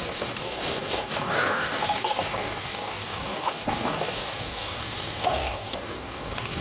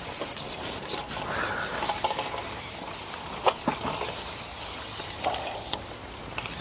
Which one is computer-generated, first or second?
first